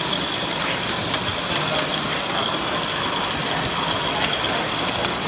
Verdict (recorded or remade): recorded